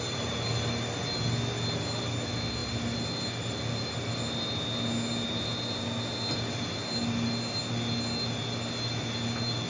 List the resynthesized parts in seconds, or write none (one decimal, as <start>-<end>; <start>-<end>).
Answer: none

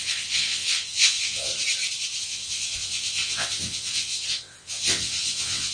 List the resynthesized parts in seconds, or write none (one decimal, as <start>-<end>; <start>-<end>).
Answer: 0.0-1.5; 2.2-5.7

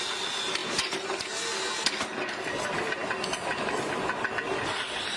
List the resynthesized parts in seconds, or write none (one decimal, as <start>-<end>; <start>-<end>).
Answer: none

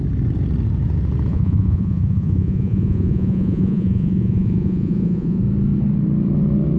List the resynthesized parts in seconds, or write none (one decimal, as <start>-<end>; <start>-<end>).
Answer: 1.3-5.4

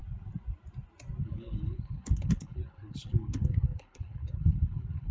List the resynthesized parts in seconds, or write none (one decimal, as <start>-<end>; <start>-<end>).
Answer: 1.2-5.1

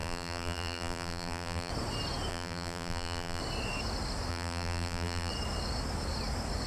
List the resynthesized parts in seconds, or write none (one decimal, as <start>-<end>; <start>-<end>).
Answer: 0.0-1.7; 2.3-3.4; 4.3-5.3

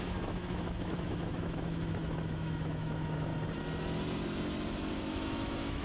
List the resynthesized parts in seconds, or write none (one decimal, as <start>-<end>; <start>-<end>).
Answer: 0.0-3.3; 5.1-5.8

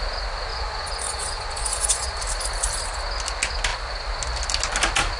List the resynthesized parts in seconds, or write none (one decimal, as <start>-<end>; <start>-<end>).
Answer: 0.5-2.2